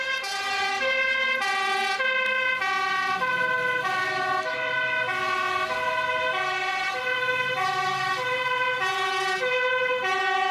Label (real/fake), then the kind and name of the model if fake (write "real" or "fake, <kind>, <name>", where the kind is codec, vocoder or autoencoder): real